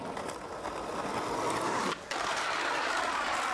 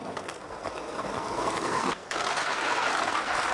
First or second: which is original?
first